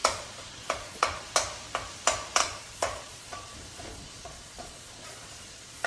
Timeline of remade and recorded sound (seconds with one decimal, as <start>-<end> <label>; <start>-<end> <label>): 0.0-1.3 remade; 1.3-2.4 recorded; 2.4-5.9 remade